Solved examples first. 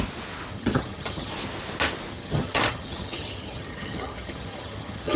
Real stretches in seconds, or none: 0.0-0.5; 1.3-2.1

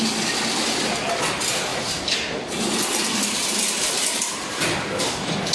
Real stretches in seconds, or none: 0.0-1.7; 5.0-5.5

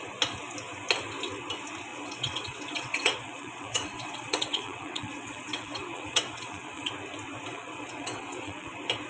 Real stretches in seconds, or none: 0.0-1.9; 6.9-7.5; 8.7-9.1

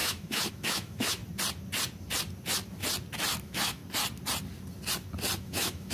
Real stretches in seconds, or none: 1.2-3.4; 3.8-5.4

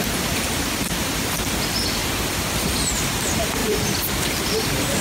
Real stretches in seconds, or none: 0.0-2.0; 2.9-3.6; 4.2-5.0

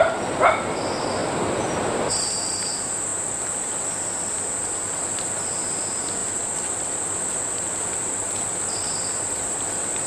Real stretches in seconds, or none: 0.0-10.1